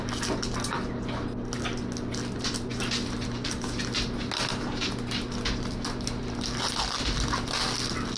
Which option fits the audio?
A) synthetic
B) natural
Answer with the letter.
B